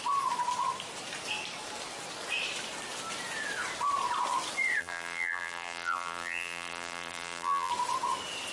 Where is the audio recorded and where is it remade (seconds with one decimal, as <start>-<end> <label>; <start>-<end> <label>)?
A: 0.0-4.8 recorded; 4.8-7.7 remade; 7.7-8.5 recorded